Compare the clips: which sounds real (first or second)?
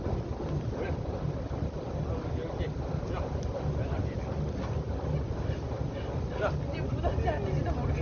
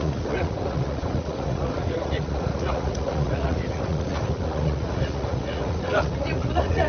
first